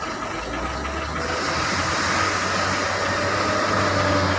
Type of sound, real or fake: real